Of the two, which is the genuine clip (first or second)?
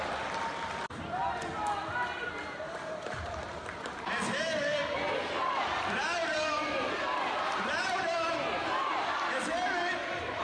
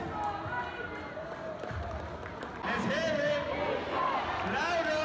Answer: second